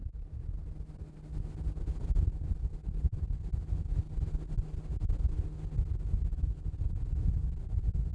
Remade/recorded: recorded